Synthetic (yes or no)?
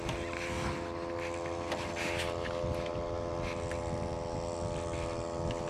no